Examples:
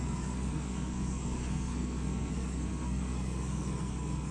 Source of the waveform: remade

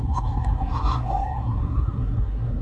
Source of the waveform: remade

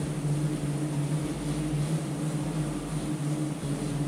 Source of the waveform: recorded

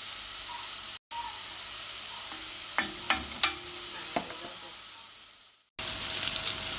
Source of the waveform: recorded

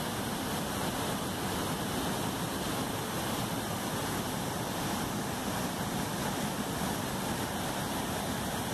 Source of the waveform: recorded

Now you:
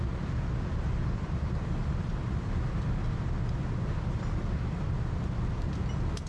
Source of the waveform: recorded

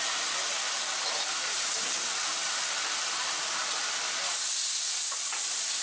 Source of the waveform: recorded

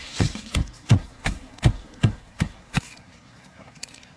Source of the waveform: remade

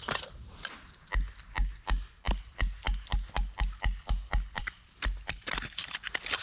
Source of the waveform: recorded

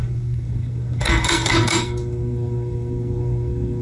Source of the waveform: remade